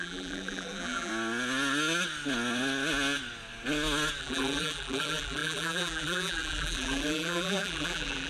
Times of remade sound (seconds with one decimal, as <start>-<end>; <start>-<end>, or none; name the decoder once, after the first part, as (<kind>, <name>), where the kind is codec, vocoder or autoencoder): 0.0-1.1 (vocoder, BigVGAN v2); 4.2-8.3